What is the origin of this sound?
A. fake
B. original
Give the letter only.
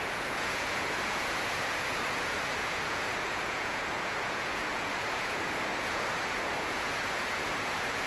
A